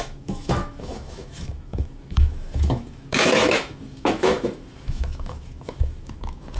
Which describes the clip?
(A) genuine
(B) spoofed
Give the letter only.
B